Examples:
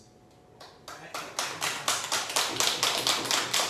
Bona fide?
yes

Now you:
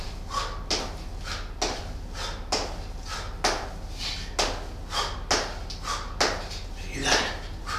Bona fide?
yes